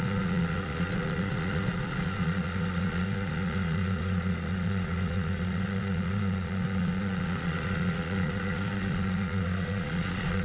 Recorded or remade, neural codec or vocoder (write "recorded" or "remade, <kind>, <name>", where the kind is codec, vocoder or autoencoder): remade, vocoder, Vocos